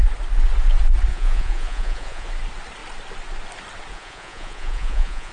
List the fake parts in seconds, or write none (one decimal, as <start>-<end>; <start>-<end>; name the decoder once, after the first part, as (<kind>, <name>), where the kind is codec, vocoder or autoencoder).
1.1-2.3 (vocoder, Vocos); 3.9-5.3

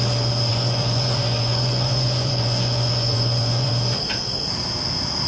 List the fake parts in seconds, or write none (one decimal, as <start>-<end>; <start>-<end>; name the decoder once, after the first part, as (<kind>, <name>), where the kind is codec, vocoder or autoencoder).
0.5-3.7 (vocoder, Vocos)

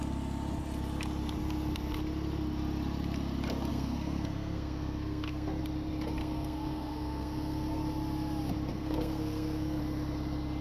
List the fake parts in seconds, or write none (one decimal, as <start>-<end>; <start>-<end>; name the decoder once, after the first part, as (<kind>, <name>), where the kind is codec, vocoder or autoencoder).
3.7-5.6 (codec, SNAC); 6.2-7.8; 8.7-9.8

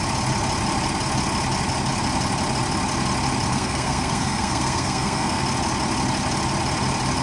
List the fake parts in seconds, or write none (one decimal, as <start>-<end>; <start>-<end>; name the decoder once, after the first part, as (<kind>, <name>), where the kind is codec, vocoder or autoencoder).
3.5-5.4 (codec, SNAC)

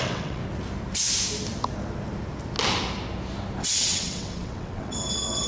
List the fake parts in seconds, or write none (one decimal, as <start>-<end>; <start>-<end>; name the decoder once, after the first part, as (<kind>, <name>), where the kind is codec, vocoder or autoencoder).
0.0-0.4 (vocoder, WaveNeXt); 3.6-5.5

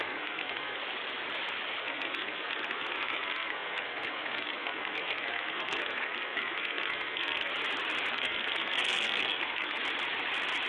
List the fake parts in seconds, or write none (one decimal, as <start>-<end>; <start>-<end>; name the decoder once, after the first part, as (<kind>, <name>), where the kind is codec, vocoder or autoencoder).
0.0-0.8 (codec, SNAC); 1.8-7.5; 8.1-9.8